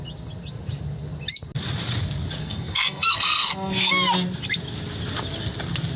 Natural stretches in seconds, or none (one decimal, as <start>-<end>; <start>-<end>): 0.0-2.4; 3.9-6.0